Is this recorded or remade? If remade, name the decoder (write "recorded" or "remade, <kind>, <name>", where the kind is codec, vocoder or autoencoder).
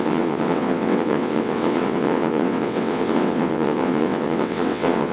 remade, vocoder, WaveNeXt